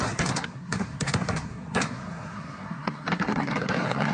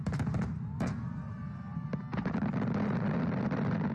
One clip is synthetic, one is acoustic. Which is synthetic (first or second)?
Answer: first